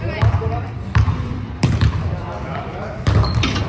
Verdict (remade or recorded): remade